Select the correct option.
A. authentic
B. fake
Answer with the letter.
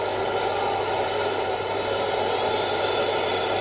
A